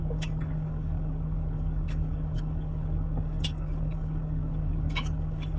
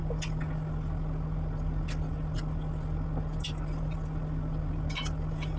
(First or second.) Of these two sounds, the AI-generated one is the first